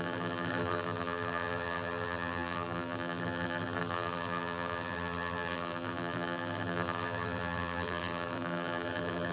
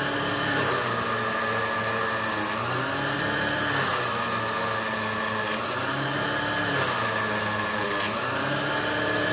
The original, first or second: second